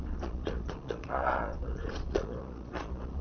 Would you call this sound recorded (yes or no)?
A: no